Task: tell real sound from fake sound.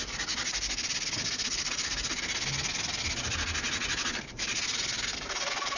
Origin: real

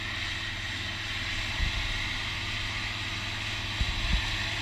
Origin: real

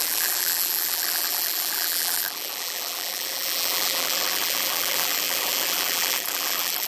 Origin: fake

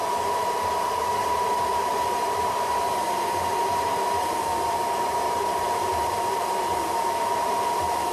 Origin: fake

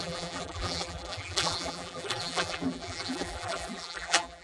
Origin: fake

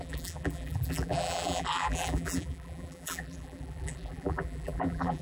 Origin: fake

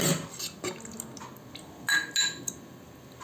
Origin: real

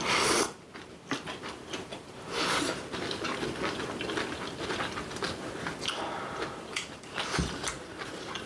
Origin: fake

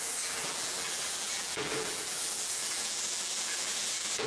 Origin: fake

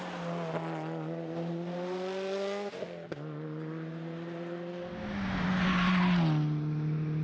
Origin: real